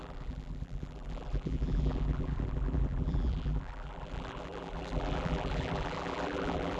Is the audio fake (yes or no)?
yes